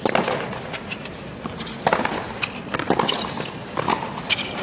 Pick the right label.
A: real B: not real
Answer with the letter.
A